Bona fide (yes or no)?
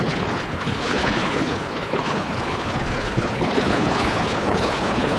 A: no